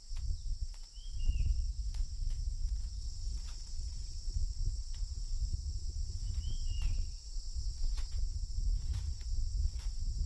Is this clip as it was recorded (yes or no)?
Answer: no